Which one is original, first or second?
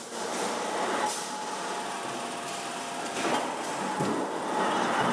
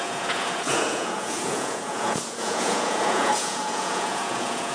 first